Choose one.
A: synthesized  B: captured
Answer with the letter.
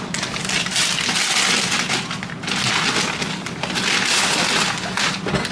B